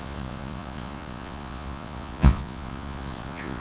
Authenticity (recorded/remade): remade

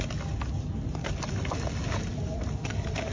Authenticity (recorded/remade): recorded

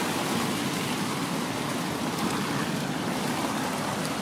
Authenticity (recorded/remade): recorded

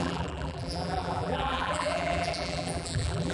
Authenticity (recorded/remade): remade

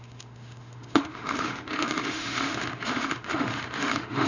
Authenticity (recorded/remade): remade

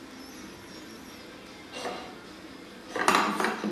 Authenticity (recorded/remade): recorded